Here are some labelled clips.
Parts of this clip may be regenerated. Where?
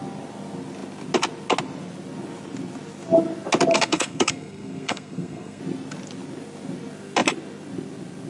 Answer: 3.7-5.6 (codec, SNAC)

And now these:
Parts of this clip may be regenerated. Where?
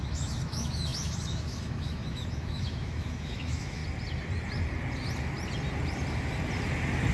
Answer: 0.0-3.8 (autoencoder, DAC-VAE)